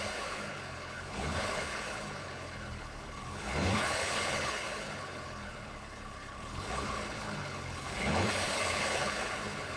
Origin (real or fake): fake